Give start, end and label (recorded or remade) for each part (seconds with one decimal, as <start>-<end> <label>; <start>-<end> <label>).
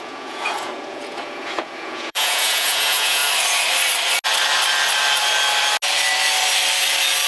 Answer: 0.0-3.2 remade; 3.2-7.3 recorded